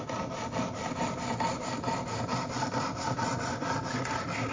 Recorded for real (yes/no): yes